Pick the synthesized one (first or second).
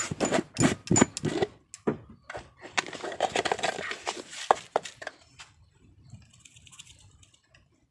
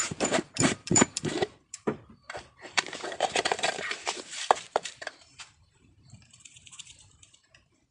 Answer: second